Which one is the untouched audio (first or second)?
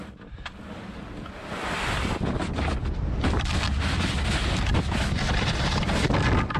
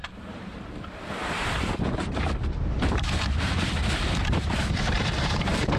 first